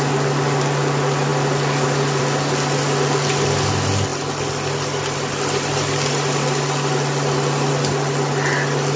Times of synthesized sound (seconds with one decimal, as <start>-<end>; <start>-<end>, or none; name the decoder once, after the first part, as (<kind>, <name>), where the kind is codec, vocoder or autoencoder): none

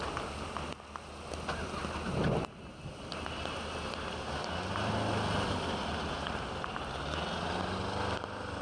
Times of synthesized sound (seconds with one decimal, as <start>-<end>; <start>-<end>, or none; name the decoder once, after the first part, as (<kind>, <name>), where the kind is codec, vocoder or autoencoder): none

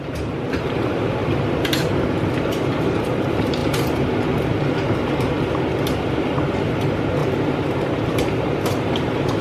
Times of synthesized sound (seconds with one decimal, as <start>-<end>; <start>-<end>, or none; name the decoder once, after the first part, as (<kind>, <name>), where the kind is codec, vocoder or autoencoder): 0.0-1.2 (vocoder, BigVGAN v2); 2.4-3.6; 6.5-9.4

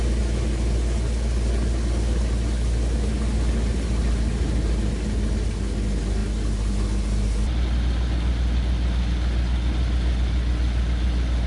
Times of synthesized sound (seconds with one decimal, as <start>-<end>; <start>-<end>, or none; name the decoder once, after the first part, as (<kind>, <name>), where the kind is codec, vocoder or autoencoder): none

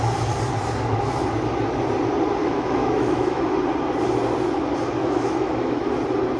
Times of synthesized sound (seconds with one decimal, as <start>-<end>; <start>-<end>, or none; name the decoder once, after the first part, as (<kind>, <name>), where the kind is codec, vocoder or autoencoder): 2.4-3.6 (autoencoder, DAC-VAE); 5.0-6.0

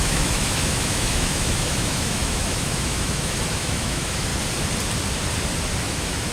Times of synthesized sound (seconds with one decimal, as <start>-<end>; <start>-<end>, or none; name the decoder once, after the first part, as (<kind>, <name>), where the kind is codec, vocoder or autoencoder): 0.0-4.3 (autoencoder, DAC-VAE); 5.8-6.3

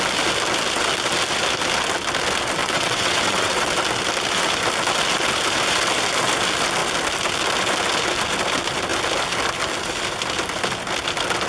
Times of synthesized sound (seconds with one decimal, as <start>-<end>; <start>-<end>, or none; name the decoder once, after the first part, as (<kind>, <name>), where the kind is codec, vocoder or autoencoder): 2.6-3.7 (vocoder, WaveNeXt)